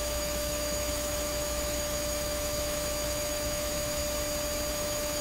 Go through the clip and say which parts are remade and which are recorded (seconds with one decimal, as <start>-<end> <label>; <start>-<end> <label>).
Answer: 0.0-4.0 remade; 4.0-4.7 recorded; 4.7-5.2 remade